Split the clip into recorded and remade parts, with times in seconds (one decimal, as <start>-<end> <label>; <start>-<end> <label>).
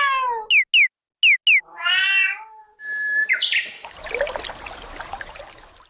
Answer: 0.0-5.9 recorded